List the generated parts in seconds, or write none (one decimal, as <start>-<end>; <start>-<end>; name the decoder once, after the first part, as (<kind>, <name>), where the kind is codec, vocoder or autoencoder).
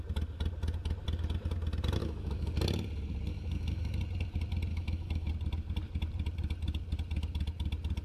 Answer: 2.0-2.5 (autoencoder, DAC-VAE); 3.3-4.0; 4.7-5.3